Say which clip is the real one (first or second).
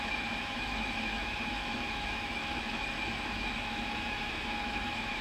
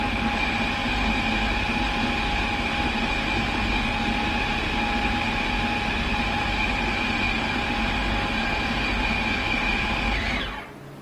second